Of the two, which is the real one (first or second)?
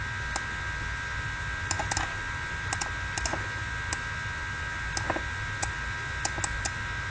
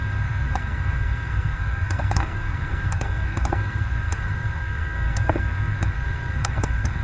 first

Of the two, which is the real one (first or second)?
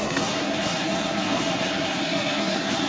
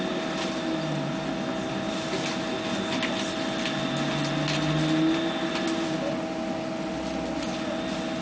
second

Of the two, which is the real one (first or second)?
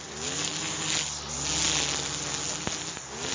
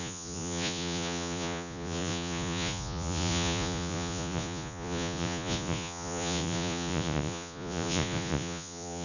first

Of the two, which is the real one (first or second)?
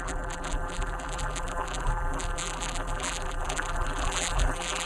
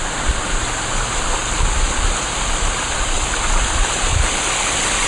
second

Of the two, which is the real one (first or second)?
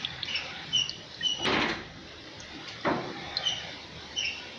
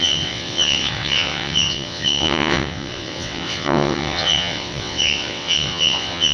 first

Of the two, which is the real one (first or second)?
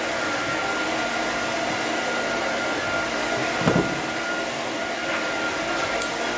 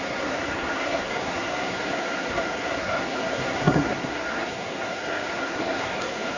first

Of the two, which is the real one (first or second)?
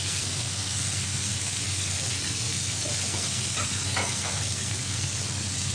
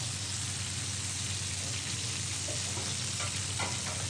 second